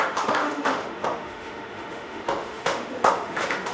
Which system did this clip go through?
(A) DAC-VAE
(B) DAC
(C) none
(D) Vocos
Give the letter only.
A